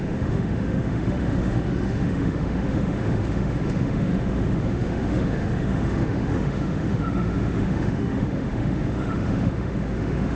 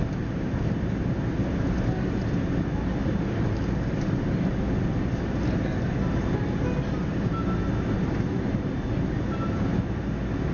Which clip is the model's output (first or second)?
first